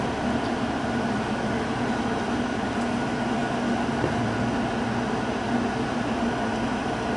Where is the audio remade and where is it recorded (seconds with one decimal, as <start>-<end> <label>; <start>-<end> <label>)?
0.0-7.2 recorded